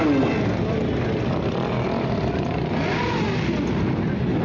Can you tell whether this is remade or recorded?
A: recorded